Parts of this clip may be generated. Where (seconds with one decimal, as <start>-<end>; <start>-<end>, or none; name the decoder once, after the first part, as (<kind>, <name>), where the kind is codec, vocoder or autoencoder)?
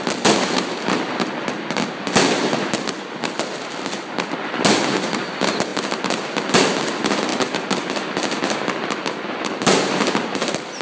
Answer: none